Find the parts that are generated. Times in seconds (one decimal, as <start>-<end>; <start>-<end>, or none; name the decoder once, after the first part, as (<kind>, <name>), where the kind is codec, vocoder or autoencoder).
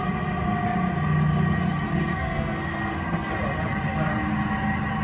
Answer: 2.0-3.3 (codec, SNAC)